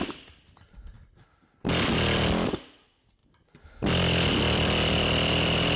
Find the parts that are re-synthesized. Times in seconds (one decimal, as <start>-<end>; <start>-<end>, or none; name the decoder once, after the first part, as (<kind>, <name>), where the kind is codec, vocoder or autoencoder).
none

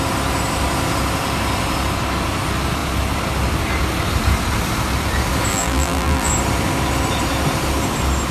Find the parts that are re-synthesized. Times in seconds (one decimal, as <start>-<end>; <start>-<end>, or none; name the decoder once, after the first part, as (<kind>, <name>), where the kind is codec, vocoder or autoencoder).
5.5-6.3 (vocoder, BigVGAN v2)

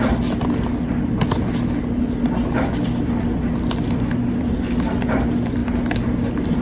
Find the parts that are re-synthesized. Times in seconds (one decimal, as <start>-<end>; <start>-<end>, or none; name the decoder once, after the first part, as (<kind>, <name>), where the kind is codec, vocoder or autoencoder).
none

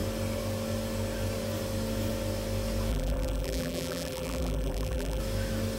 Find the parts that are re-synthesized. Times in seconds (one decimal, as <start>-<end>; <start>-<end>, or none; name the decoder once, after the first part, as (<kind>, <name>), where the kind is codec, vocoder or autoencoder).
2.9-5.2 (vocoder, BigVGAN v2)